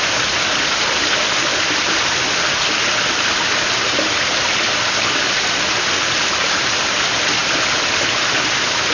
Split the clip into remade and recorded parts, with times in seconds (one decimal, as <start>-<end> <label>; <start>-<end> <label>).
0.0-8.9 recorded